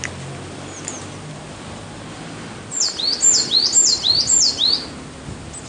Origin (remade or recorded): recorded